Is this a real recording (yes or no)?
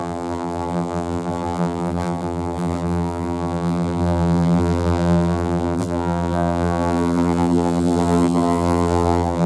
no